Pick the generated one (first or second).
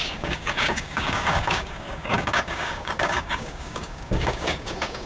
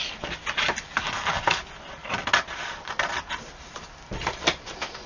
first